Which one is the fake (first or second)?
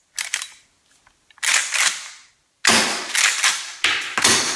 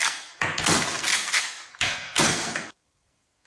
second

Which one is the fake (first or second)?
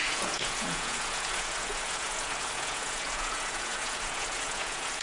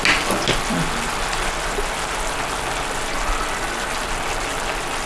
first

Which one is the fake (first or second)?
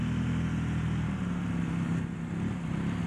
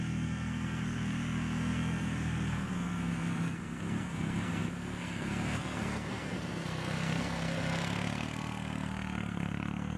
second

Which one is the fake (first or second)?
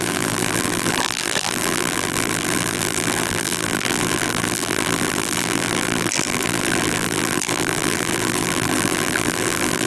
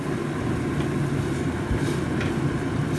first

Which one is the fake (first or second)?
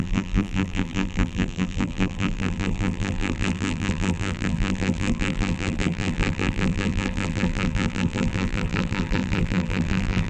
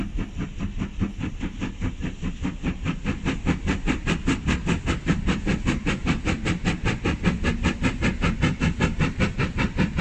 first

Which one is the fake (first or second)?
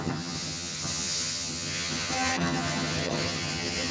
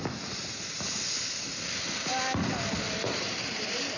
first